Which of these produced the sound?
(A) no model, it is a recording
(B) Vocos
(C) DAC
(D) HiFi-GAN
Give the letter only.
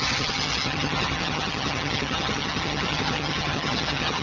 D